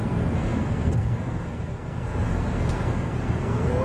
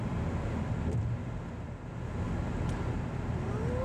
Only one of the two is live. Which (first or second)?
second